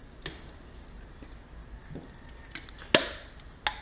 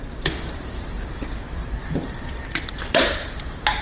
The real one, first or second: first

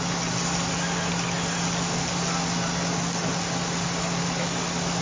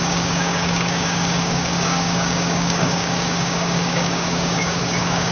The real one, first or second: first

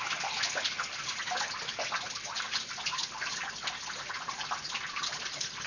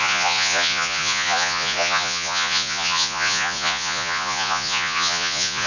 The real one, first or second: first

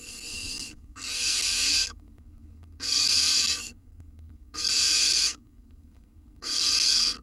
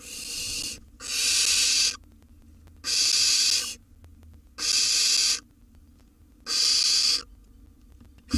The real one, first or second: second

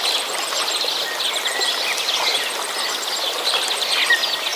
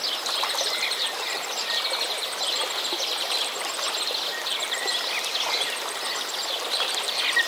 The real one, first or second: first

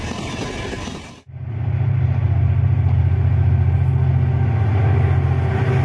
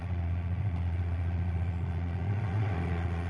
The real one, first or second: first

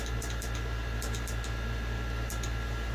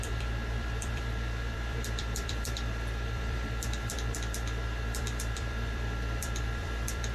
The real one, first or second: first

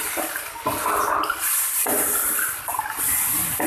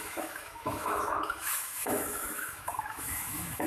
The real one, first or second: first